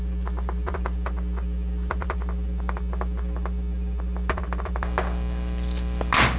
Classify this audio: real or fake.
real